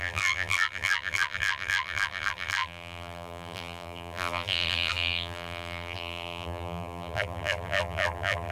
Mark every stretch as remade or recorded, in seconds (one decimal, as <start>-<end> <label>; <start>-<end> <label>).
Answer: 0.0-8.5 remade